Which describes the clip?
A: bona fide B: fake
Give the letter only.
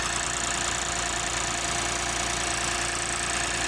A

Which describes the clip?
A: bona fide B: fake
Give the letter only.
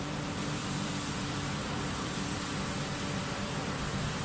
B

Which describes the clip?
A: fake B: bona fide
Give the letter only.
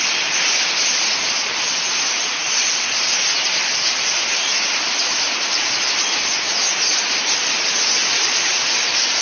A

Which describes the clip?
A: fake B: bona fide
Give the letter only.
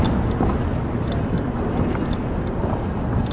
B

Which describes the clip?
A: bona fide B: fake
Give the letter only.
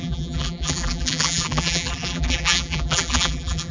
B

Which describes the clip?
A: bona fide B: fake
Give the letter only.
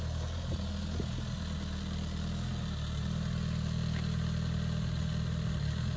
A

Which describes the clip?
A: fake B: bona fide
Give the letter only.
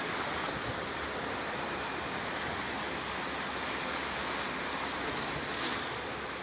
B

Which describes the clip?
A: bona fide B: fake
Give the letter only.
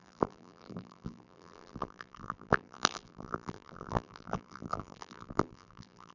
B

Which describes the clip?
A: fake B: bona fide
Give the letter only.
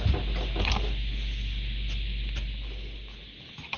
B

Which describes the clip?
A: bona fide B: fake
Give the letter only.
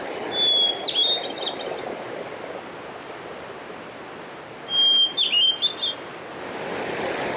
A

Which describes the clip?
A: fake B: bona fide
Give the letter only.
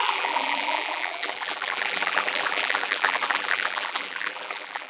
A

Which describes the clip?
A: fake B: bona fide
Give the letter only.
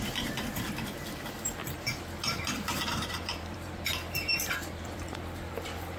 A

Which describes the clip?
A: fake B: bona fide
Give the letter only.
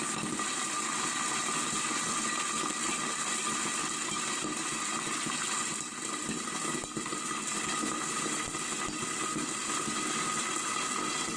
B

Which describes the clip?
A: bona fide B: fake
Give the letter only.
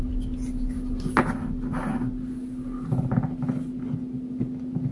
A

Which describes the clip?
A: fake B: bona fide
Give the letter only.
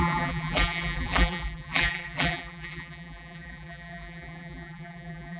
A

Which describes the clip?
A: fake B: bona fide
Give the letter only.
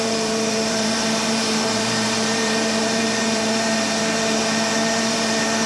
A